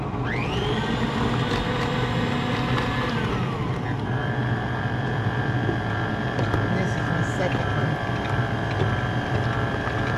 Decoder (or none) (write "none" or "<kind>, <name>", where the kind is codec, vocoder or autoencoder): none